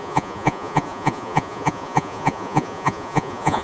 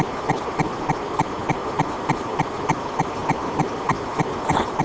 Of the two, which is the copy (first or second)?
first